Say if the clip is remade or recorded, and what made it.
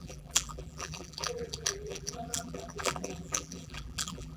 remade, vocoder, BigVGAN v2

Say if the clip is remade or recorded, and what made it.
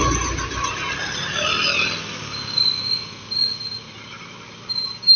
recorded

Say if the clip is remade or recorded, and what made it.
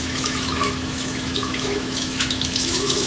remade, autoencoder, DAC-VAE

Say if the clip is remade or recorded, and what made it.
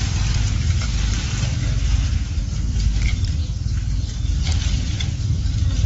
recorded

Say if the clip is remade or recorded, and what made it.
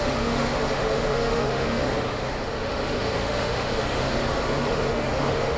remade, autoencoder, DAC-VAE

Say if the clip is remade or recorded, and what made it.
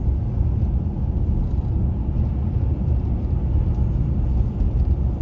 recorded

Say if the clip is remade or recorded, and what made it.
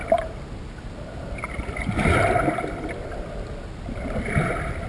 recorded